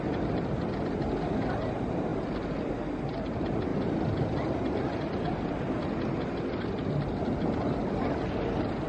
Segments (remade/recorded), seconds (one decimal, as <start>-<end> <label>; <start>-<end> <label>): 0.0-8.9 recorded